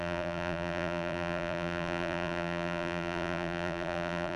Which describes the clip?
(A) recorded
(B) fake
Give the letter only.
B